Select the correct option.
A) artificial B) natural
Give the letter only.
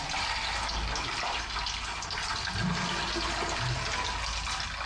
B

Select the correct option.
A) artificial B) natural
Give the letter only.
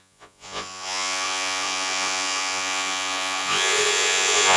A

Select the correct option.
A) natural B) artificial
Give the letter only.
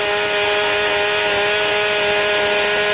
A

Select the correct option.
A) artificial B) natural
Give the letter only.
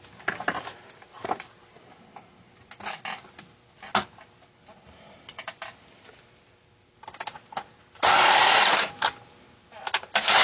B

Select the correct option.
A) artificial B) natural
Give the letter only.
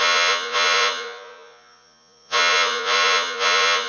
A